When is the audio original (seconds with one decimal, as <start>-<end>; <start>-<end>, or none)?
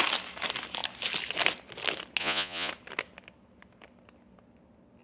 0.0-2.2; 2.7-5.0